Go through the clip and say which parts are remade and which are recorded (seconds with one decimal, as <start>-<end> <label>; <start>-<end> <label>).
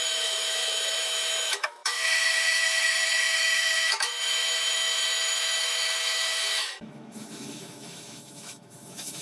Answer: 0.0-9.2 remade